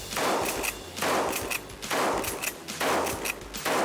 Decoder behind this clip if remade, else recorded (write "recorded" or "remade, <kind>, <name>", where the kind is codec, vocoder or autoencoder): recorded